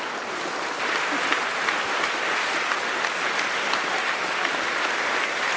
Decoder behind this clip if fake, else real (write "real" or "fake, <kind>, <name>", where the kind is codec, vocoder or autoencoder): fake, vocoder, BigVGAN v2